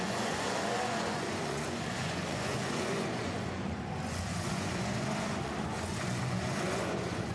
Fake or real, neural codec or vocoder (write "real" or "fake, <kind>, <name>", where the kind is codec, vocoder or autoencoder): fake, vocoder, Vocos